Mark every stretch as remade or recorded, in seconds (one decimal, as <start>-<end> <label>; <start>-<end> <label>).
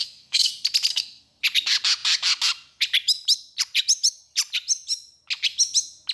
0.0-0.5 remade; 0.5-0.9 recorded; 0.9-1.4 remade; 1.4-6.1 recorded